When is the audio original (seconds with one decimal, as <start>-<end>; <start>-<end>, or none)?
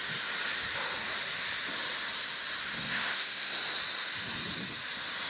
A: 0.0-2.6; 3.6-5.3